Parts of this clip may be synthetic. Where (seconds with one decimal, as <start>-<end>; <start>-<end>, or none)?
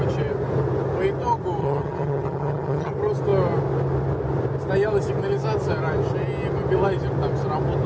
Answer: 1.6-2.9